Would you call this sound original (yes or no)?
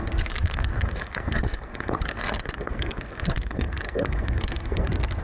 no